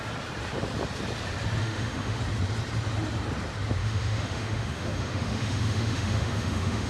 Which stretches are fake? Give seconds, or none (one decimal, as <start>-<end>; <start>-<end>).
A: 1.6-2.2; 3.8-6.9